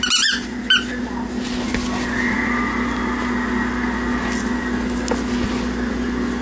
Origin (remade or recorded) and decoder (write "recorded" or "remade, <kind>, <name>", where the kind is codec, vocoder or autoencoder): recorded